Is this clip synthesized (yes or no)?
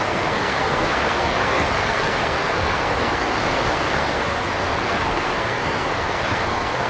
yes